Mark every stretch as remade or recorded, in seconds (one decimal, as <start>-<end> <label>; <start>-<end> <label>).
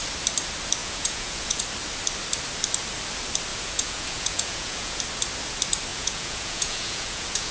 0.0-0.8 recorded; 0.8-1.6 remade; 1.6-3.5 recorded; 3.5-5.0 remade; 5.0-5.9 recorded; 5.9-7.5 remade